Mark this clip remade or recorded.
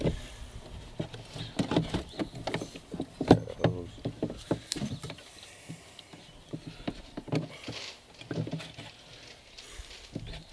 recorded